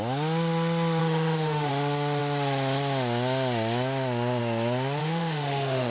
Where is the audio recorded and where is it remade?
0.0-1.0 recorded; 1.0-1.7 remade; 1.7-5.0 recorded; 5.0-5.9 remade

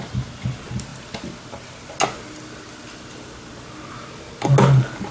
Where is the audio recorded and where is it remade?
0.0-5.1 recorded

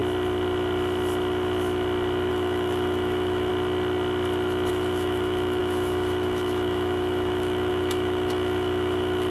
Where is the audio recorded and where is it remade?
0.0-2.3 recorded; 2.3-3.5 remade; 3.5-4.7 recorded; 4.7-9.3 remade

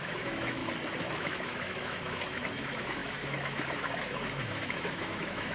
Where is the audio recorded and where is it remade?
0.0-0.6 remade; 0.6-1.2 recorded; 1.2-5.5 remade

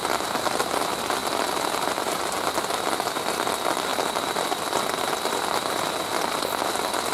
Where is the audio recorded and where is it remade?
0.0-7.1 recorded

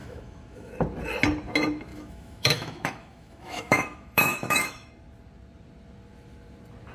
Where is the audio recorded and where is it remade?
0.0-0.7 remade; 0.7-1.9 recorded; 1.9-4.9 remade; 4.9-6.9 recorded

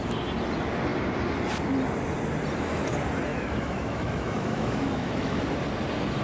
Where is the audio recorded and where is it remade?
0.0-3.3 recorded; 3.3-5.4 remade; 5.4-6.2 recorded

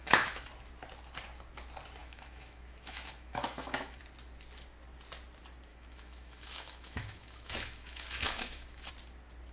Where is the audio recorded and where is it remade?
0.0-0.5 remade; 0.5-2.0 recorded; 2.0-4.0 remade; 4.0-5.7 recorded; 5.7-8.9 remade; 8.9-9.5 recorded